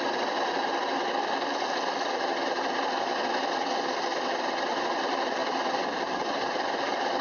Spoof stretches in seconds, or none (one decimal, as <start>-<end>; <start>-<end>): none

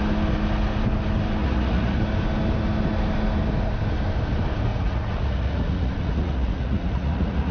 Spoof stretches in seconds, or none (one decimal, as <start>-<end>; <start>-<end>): 1.4-2.0; 4.7-7.5

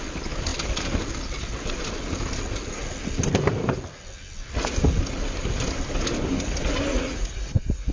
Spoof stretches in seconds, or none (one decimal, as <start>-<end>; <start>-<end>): 6.9-7.9

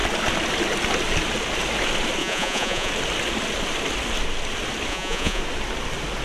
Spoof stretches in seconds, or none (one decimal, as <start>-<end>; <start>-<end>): 2.2-2.9; 4.9-5.4

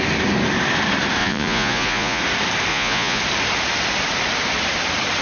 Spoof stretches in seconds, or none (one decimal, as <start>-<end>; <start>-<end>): 1.2-2.2; 2.7-3.2

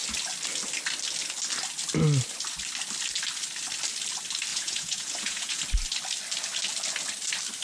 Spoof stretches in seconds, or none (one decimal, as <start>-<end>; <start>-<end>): 4.5-5.6

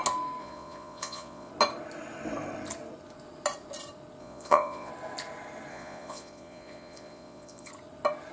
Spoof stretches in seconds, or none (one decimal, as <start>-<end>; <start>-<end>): 0.4-1.5; 4.2-4.9; 5.7-7.7